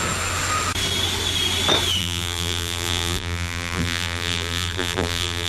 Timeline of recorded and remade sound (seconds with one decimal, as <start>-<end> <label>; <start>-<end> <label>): 0.0-2.0 recorded; 2.0-5.5 remade